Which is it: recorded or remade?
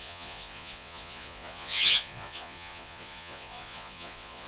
remade